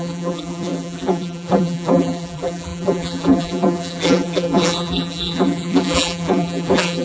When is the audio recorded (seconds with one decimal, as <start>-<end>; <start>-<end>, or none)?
none